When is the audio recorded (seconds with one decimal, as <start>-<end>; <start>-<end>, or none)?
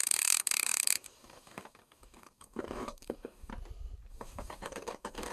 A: 3.5-4.1